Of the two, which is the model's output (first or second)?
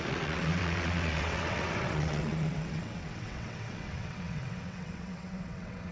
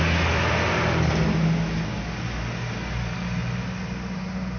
first